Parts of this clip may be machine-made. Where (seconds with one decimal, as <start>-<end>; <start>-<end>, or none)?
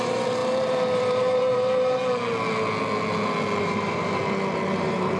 0.0-2.0; 3.6-4.2; 4.7-5.2